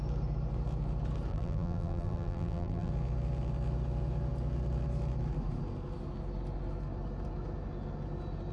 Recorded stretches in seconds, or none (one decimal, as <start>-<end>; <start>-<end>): 0.0-1.3; 2.9-8.5